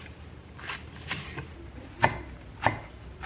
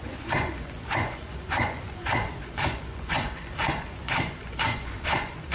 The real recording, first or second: first